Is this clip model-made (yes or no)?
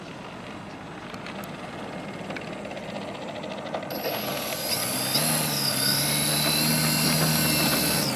no